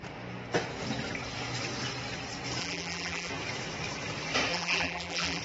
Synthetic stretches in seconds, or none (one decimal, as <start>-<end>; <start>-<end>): 2.6-3.3; 4.5-5.4